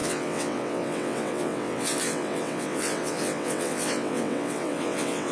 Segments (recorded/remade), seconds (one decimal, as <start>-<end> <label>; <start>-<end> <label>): 0.0-5.3 remade